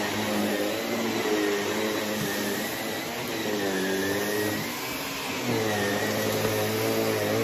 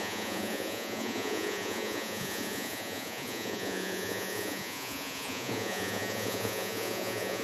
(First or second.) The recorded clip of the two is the first